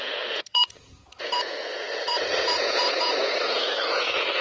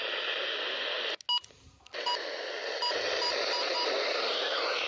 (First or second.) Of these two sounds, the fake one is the first